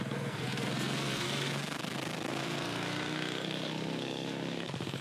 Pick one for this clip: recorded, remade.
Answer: remade